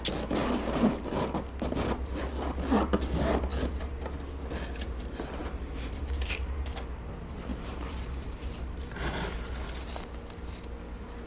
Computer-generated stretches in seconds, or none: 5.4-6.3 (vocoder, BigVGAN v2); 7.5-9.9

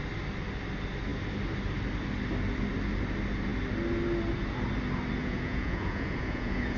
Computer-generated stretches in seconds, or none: 5.2-6.8 (vocoder, Vocos)

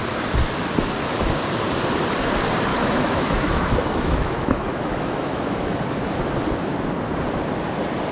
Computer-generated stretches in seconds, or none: 2.7-5.8 (autoencoder, DAC-VAE)

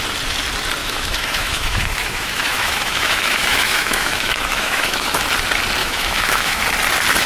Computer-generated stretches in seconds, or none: 0.8-5.2 (autoencoder, DAC-VAE); 5.8-6.6

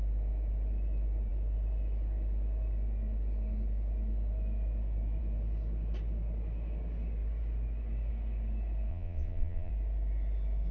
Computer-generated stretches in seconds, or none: 8.9-9.7 (vocoder, Vocos)

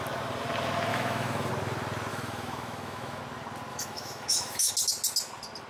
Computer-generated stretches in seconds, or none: 0.9-1.5 (autoencoder, DAC-VAE); 2.1-3.2; 3.7-4.7